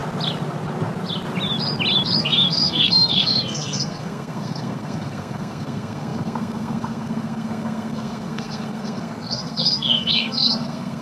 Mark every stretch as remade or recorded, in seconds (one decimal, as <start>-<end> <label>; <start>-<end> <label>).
0.0-2.2 recorded; 2.2-11.0 remade